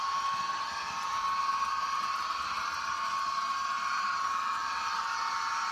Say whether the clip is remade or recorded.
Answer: recorded